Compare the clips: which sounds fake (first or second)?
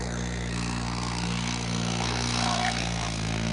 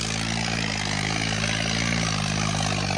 first